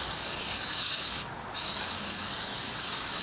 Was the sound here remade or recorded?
remade